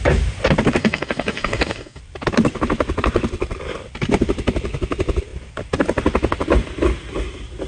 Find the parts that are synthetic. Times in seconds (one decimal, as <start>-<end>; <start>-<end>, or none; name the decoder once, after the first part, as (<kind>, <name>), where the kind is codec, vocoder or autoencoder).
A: 0.8-2.0 (codec, DAC)